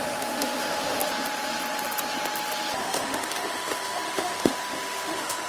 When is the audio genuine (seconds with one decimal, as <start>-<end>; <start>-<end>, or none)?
1.0-2.8